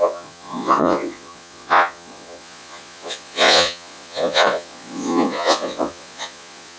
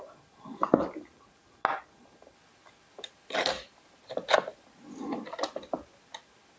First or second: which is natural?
second